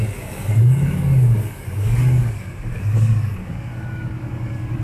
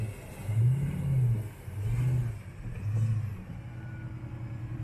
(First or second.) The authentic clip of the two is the second